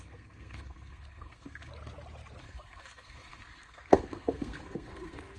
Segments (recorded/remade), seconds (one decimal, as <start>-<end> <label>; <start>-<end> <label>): 0.0-1.7 remade; 1.7-2.4 recorded; 2.4-5.4 remade

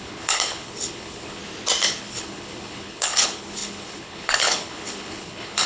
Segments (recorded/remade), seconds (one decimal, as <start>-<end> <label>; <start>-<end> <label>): 0.0-1.4 remade; 1.4-2.0 recorded; 2.0-5.7 remade

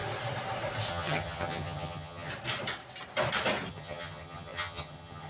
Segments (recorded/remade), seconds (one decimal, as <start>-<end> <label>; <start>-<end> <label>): 0.0-0.9 recorded; 0.9-2.3 remade; 2.3-3.7 recorded; 3.7-5.3 remade

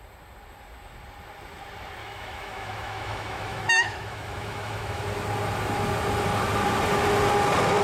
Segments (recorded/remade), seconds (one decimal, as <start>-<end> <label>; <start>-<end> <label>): 0.0-2.0 recorded; 2.0-5.0 remade; 5.0-7.8 recorded

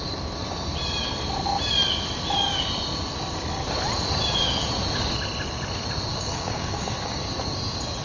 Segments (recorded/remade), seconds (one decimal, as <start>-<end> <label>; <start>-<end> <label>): 0.0-6.1 recorded; 6.1-7.2 remade; 7.2-8.0 recorded

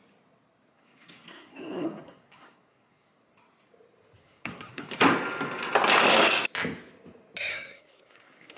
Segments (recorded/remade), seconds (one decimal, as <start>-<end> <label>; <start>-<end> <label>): 0.0-0.7 recorded; 0.7-3.1 remade; 3.1-4.2 recorded; 4.2-4.8 remade; 4.8-7.5 recorded; 7.5-8.6 remade

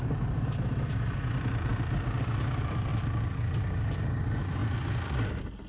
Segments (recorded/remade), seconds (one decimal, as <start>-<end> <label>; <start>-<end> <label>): 0.0-2.9 remade; 2.9-4.0 recorded; 4.0-5.7 remade

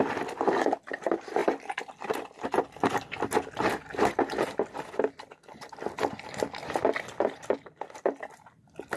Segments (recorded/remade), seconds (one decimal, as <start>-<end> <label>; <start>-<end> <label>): 0.0-9.0 recorded